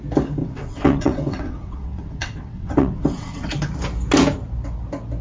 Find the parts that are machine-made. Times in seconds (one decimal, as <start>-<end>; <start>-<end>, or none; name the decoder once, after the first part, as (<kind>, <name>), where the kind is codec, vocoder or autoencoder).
0.4-3.5 (vocoder, WaveNeXt)